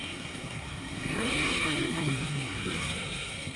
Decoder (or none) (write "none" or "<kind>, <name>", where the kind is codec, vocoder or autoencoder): codec, SNAC